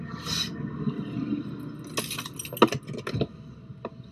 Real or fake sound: real